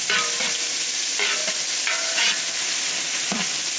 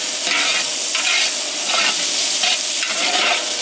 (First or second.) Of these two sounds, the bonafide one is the second